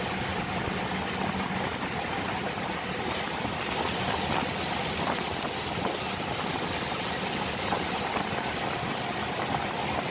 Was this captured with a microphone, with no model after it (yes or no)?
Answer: yes